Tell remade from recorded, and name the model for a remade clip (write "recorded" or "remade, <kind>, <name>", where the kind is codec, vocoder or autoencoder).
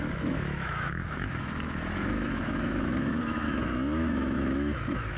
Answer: remade, autoencoder, DAC-VAE